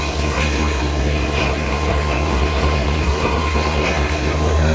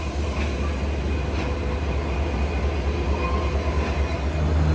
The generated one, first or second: first